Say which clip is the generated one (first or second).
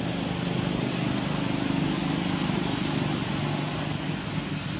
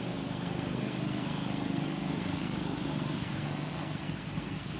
second